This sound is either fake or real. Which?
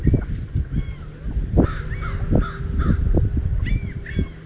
real